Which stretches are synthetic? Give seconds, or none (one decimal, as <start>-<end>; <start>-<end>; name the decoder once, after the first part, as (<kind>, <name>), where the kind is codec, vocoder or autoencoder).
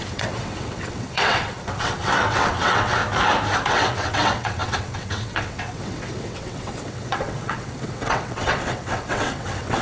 0.0-3.0 (vocoder, WaveNeXt); 3.7-9.8